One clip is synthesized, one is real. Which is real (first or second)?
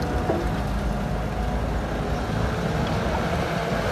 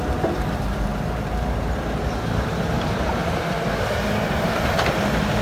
first